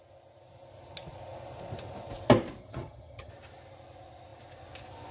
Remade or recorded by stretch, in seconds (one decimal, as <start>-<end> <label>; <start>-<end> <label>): 0.0-2.6 recorded; 2.6-3.3 remade; 3.3-5.1 recorded